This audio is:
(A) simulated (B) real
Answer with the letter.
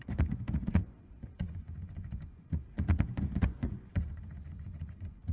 A